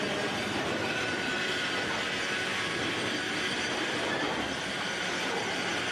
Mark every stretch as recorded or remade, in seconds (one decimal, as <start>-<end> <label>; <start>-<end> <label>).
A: 0.0-2.5 recorded; 2.5-4.8 remade; 4.8-5.9 recorded